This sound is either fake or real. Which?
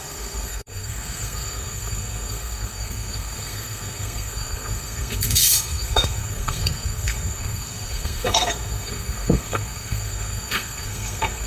fake